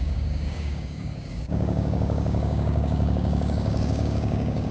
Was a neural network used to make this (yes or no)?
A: yes